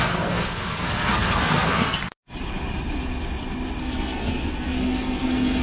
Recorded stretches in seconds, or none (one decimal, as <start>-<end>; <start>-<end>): 2.0-3.8

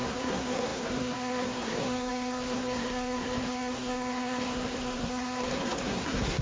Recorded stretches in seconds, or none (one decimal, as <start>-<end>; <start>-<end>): none